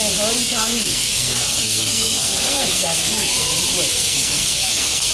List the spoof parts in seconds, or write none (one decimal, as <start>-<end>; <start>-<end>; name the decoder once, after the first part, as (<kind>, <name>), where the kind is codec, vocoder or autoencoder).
0.4-3.5 (codec, SNAC); 3.9-5.1

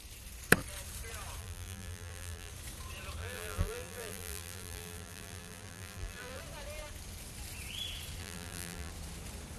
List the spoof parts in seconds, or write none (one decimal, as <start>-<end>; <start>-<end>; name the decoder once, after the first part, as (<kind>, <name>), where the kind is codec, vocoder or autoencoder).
1.4-2.5 (vocoder, BigVGAN v2); 3.2-6.4; 8.2-8.9

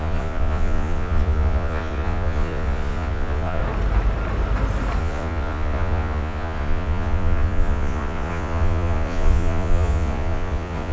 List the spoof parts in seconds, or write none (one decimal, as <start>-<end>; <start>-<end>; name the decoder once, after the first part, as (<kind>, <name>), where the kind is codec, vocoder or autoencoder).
0.0-3.6 (vocoder, Vocos); 5.0-10.9

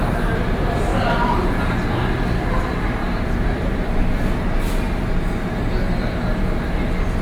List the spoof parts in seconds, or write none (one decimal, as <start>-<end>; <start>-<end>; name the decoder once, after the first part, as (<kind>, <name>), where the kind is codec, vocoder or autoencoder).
none

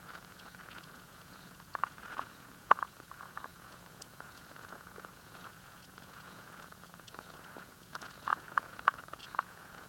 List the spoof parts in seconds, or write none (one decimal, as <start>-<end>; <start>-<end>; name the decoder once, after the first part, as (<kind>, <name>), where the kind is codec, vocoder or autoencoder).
0.0-9.9 (vocoder, Vocos)

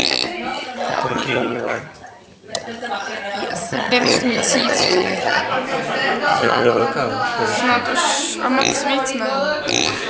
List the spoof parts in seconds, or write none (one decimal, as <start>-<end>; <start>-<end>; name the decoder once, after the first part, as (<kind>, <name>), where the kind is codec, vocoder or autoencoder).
0.5-5.4 (vocoder, HiFi-GAN); 6.3-6.8